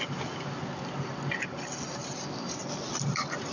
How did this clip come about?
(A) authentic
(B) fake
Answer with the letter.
A